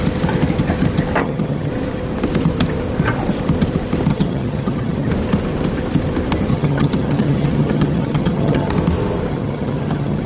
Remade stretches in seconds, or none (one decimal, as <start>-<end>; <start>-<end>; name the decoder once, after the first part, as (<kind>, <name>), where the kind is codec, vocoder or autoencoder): 1.2-1.7 (vocoder, HiFi-GAN); 4.1-5.1; 6.5-8.7; 9.3-10.3